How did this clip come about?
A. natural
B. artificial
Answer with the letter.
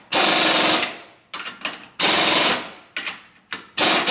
A